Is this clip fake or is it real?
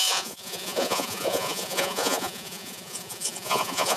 fake